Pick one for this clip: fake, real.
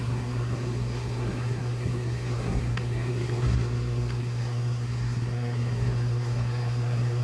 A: fake